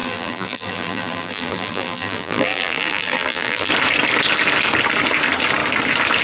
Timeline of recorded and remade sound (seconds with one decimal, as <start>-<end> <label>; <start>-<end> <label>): 0.0-3.7 remade; 3.7-6.2 recorded